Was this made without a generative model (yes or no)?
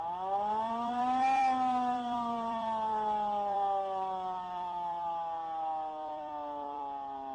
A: no